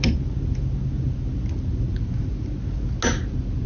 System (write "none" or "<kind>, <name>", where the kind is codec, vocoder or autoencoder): none